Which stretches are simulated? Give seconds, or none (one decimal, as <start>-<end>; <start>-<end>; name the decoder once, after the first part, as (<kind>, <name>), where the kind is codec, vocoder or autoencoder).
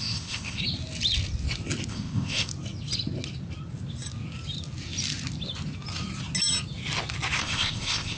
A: 0.0-0.6 (codec, ZipCodec); 1.9-2.5; 7.4-8.2